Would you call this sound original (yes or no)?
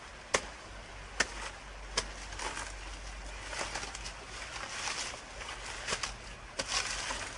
yes